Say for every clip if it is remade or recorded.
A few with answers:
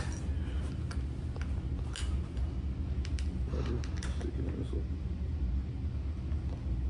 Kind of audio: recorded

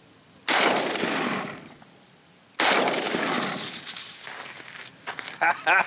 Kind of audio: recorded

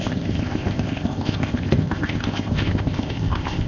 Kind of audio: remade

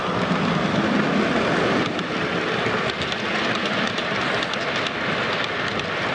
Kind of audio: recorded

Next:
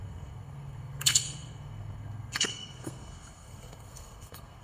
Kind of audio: remade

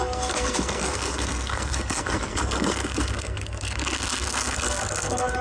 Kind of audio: remade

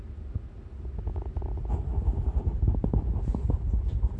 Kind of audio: recorded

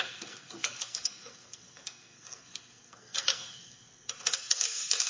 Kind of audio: remade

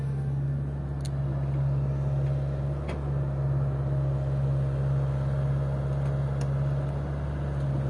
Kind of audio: recorded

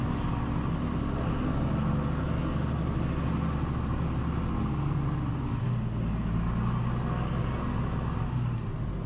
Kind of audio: recorded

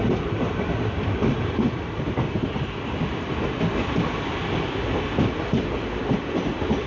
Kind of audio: remade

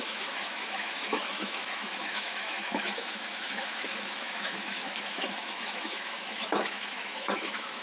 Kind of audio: remade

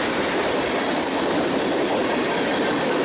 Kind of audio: recorded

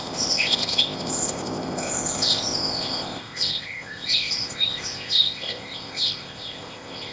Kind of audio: remade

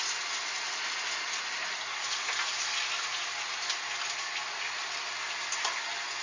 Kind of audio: recorded